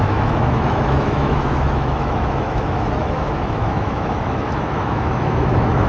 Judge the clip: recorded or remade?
remade